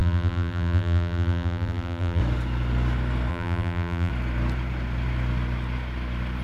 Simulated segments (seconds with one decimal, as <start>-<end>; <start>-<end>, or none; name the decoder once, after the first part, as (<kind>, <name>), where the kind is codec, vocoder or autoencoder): 0.0-2.2 (vocoder, BigVGAN v2); 3.3-4.1